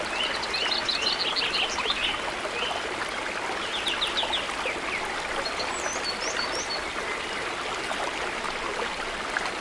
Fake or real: real